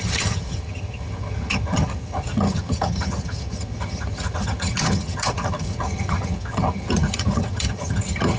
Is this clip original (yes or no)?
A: no